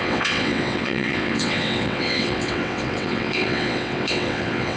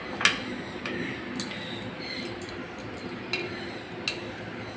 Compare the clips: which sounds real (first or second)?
second